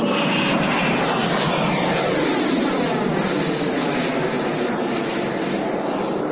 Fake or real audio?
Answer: real